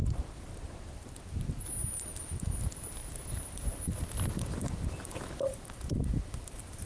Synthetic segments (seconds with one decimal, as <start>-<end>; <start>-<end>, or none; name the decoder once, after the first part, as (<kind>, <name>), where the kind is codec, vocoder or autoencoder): 0.0-6.9 (vocoder, BigVGAN v2)